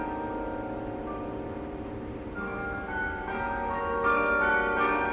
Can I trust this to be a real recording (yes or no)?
no